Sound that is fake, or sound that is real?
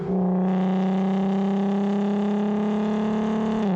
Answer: real